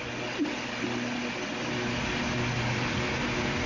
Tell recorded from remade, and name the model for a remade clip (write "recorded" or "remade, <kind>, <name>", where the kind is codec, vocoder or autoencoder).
recorded